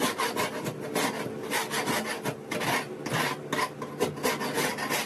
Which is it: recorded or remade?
recorded